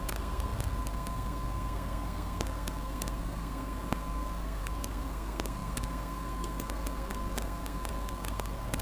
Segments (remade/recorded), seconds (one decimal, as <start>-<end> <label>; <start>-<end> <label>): 0.0-8.8 remade